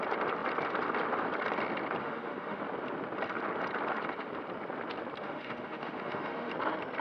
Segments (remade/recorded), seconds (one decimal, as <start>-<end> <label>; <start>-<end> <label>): 0.0-2.0 recorded; 2.0-2.6 remade; 2.6-5.2 recorded; 5.2-6.5 remade; 6.5-7.0 recorded